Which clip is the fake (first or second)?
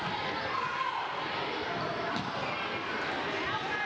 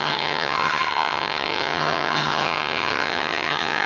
second